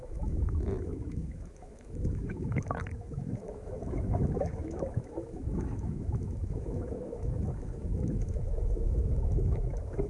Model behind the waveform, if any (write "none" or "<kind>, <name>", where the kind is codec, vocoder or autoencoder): autoencoder, DAC-VAE